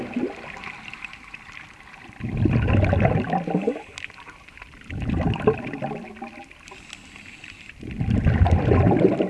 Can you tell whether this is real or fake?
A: fake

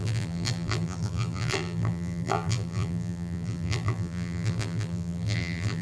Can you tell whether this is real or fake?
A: fake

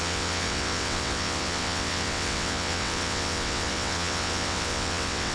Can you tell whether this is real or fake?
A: fake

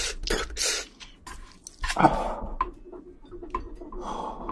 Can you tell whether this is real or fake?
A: real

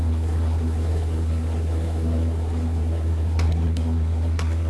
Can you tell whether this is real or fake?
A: fake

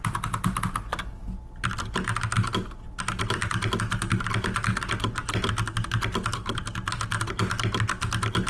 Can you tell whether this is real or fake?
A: real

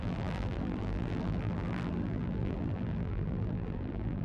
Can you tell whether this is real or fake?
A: fake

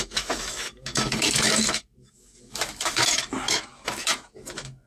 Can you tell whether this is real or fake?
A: fake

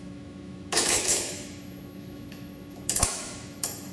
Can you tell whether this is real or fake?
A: fake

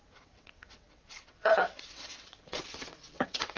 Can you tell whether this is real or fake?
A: fake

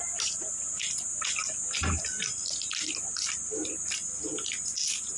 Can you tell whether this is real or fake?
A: real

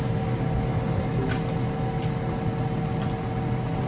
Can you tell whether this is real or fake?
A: real